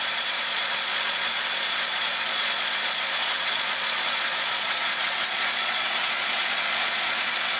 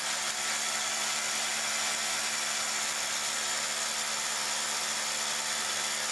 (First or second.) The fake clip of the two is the first